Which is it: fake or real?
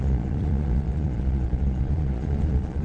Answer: fake